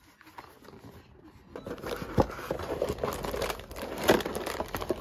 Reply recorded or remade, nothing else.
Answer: recorded